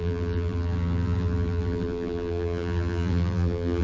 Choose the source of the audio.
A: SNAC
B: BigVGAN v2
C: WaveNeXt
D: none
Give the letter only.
B